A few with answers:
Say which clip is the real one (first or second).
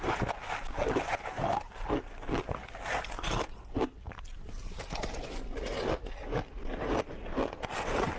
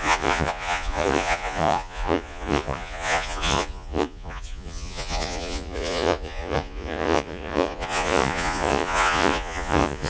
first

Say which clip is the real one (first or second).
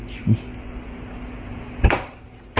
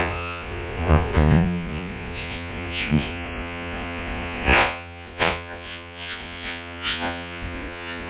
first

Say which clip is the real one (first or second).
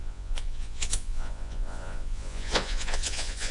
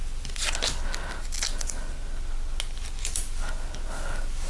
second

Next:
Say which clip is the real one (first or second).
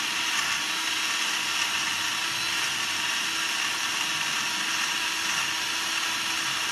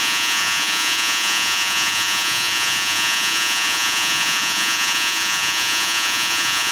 first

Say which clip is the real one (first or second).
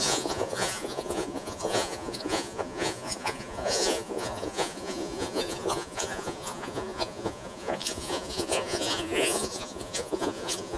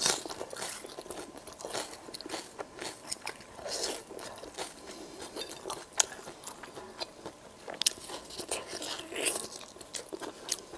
second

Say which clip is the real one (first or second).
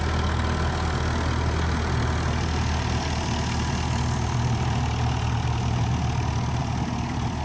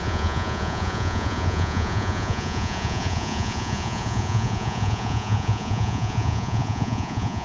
first